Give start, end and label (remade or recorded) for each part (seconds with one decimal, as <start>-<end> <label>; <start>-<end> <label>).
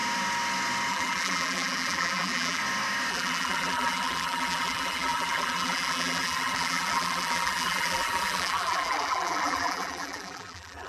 0.0-0.9 recorded; 0.9-2.6 remade; 2.6-3.1 recorded; 3.1-10.9 remade